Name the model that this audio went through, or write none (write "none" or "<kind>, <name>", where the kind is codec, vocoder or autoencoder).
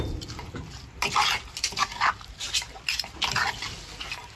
none